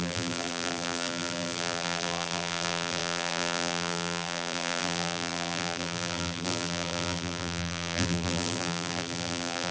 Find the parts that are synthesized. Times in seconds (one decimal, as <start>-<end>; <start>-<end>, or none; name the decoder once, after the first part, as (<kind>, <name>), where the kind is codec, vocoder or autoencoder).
0.0-9.7 (vocoder, BigVGAN v2)